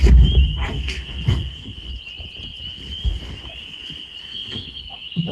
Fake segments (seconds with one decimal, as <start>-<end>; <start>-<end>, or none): 0.6-1.9; 4.2-5.3